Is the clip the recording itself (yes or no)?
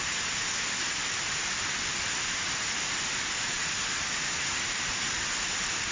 yes